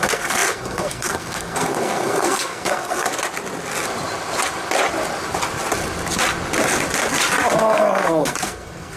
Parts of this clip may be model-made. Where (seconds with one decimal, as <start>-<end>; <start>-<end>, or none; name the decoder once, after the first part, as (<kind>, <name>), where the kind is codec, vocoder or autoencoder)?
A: 0.0-3.1 (codec, SNAC); 7.5-9.0